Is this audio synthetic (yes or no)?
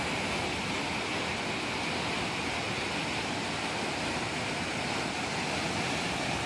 no